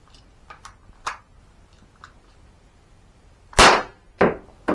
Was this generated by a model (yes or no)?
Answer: no